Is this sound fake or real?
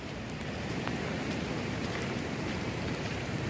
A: fake